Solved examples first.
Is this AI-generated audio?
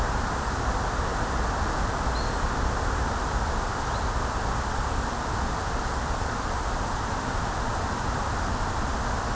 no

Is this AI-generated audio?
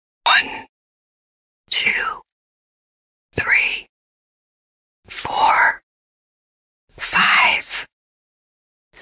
no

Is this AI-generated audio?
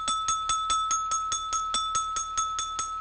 no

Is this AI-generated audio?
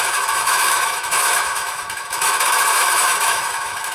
yes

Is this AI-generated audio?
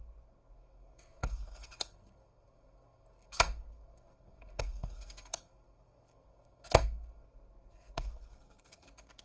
yes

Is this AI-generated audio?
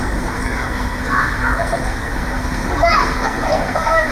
yes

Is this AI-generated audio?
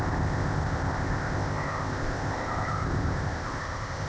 yes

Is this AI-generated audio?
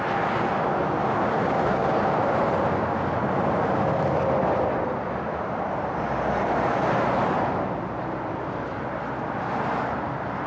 no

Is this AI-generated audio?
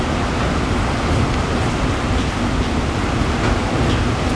no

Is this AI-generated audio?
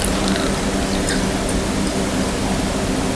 no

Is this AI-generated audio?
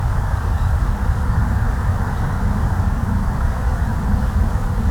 yes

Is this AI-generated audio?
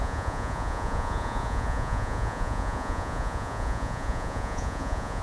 yes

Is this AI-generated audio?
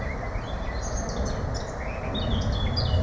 no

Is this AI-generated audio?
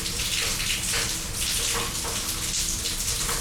no